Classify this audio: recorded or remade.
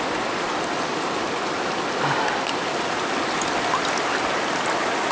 recorded